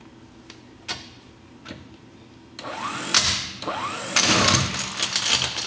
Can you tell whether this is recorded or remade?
recorded